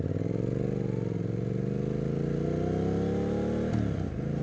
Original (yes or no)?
yes